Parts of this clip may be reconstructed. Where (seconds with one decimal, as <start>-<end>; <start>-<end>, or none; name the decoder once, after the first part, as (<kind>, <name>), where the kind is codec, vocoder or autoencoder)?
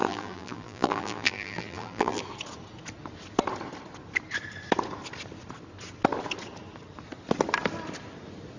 0.0-2.2 (vocoder, BigVGAN v2)